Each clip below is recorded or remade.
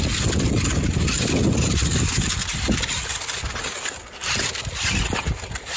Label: recorded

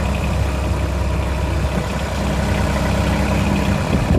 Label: recorded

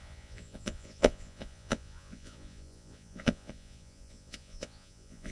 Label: remade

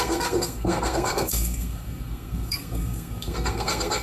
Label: remade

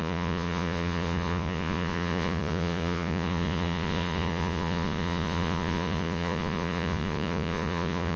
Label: remade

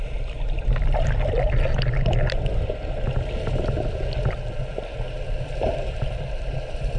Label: recorded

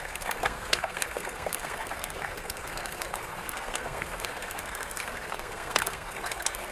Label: remade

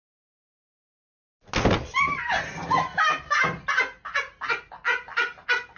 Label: recorded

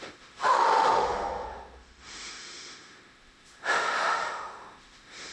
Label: remade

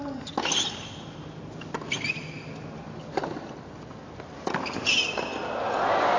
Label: recorded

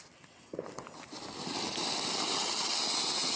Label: recorded